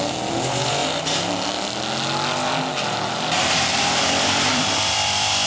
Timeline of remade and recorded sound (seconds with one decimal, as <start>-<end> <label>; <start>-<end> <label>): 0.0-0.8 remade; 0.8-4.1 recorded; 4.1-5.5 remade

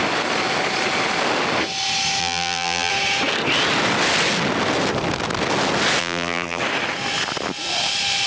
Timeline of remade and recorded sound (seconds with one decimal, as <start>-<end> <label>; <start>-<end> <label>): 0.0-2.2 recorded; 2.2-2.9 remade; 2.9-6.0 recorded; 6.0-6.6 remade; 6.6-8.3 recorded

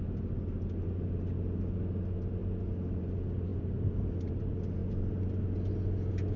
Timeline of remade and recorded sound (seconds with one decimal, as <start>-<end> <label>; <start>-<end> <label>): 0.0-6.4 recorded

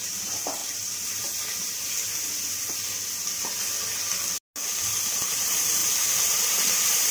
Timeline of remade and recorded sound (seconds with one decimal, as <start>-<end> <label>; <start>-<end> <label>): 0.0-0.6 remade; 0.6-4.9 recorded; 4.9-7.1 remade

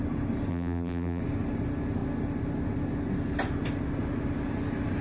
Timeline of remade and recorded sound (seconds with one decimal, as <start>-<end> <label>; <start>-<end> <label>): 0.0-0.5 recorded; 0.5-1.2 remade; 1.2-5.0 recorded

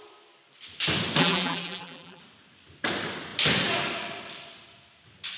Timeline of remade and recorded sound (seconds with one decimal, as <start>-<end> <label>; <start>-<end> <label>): 0.0-1.2 recorded; 1.2-2.2 remade; 2.2-5.4 recorded

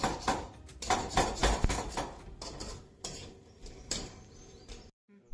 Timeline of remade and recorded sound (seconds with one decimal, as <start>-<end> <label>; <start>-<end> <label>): 0.0-1.4 remade; 1.4-3.9 recorded; 3.9-5.3 remade